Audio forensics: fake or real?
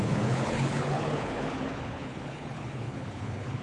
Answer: fake